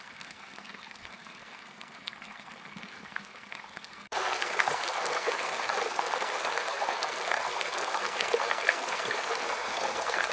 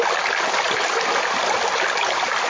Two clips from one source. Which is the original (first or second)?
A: second